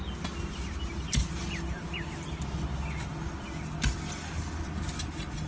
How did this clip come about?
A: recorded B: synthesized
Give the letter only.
A